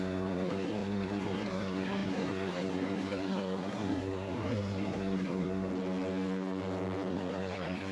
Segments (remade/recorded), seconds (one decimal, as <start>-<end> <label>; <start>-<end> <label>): 0.0-5.7 remade; 5.7-7.1 recorded; 7.1-7.9 remade